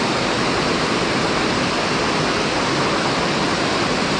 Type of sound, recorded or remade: recorded